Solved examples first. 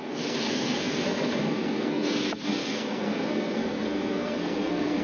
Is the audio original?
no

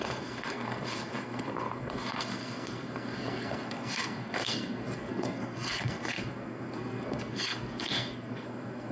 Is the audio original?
no